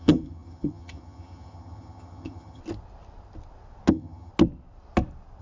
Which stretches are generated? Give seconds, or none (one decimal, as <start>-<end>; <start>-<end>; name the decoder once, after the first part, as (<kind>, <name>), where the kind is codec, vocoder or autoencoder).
0.0-2.6 (vocoder, HiFi-GAN); 3.9-4.3

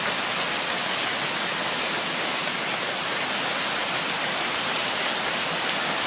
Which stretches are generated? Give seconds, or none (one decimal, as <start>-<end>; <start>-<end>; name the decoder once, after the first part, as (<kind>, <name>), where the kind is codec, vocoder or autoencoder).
none

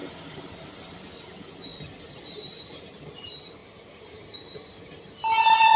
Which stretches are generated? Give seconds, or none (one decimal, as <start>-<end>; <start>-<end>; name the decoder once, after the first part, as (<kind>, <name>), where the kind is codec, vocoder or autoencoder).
none

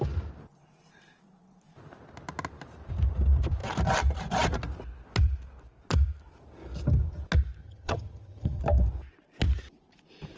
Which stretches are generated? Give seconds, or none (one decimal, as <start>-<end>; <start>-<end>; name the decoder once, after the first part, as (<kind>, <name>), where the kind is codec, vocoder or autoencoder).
7.6-8.6 (vocoder, HiFi-GAN)

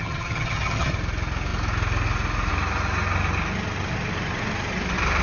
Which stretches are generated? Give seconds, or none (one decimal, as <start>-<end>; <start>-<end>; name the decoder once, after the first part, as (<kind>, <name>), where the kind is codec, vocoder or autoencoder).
0.0-0.9 (vocoder, HiFi-GAN)

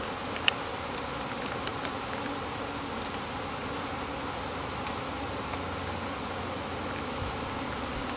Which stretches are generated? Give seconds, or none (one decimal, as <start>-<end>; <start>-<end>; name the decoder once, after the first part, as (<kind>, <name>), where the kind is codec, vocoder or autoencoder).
none